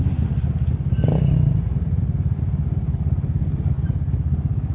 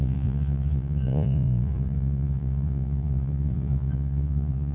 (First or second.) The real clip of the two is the first